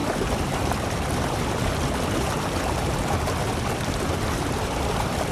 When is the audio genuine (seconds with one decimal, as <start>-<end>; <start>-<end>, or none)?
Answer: 3.2-5.3